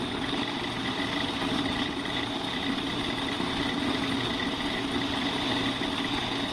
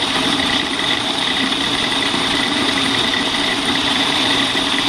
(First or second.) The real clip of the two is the first